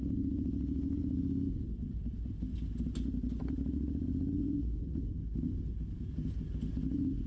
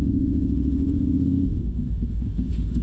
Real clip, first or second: first